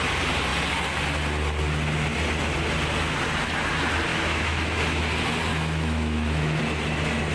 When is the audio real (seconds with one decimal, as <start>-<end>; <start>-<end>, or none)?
0.0-4.1; 5.0-5.5; 6.6-7.3